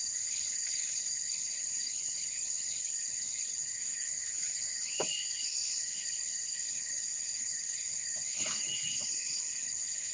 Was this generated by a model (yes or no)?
yes